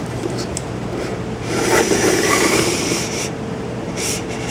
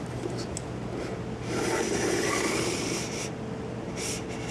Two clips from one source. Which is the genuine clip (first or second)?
second